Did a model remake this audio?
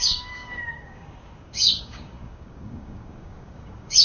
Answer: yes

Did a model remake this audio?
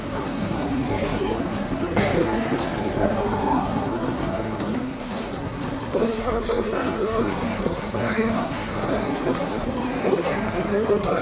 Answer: yes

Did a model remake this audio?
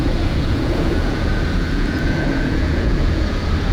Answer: yes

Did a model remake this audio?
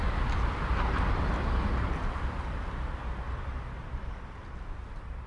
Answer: no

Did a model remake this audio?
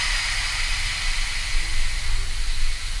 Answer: no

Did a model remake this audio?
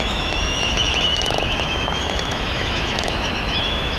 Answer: yes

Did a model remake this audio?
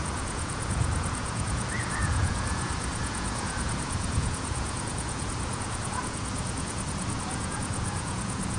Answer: yes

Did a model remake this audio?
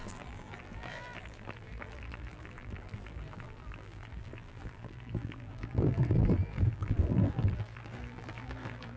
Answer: yes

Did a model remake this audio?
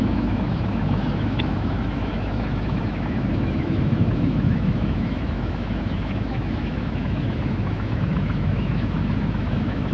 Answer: yes